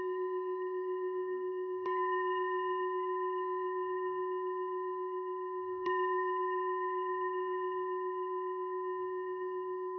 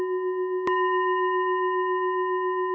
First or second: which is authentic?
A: second